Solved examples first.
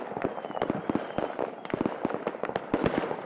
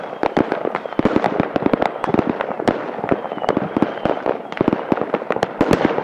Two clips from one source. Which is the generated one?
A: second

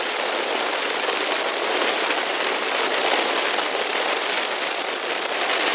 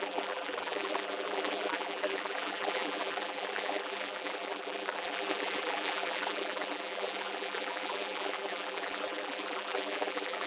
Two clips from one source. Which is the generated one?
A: second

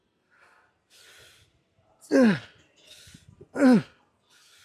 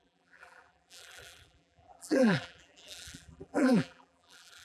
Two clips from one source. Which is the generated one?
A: second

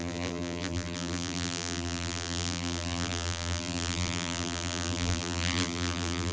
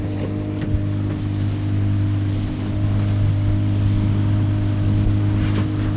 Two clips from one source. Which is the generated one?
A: first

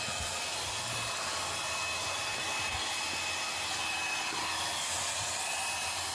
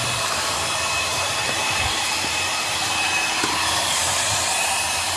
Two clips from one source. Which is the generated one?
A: second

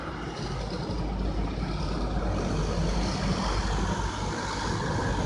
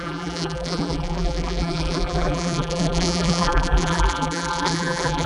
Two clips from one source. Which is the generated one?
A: second